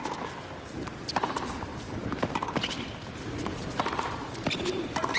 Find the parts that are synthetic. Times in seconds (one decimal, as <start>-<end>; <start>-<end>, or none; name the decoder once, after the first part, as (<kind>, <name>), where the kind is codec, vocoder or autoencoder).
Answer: 1.7-4.8 (vocoder, BigVGAN v2)